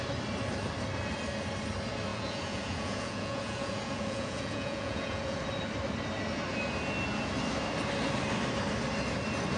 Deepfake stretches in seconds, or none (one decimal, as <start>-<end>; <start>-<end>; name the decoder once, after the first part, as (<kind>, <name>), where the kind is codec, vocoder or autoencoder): 2.1-5.4 (vocoder, Vocos)